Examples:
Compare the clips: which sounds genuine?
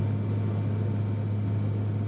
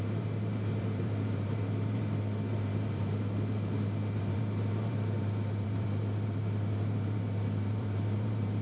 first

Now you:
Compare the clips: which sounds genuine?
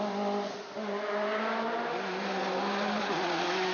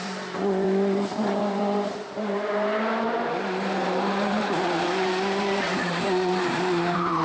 first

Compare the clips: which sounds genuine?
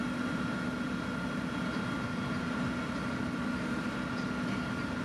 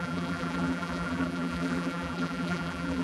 first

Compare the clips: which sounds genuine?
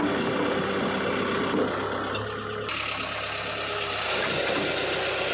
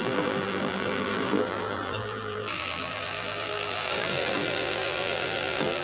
first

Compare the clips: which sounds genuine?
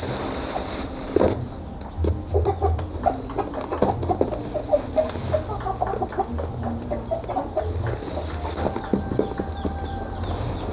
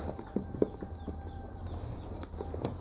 first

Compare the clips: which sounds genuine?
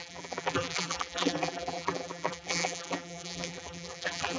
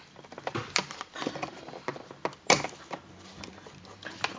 second